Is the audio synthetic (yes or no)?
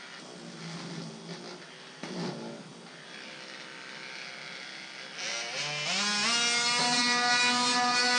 no